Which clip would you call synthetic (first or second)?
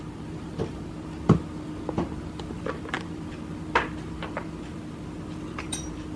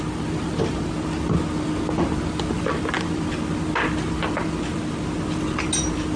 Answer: first